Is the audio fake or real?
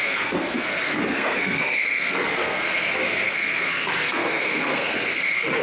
fake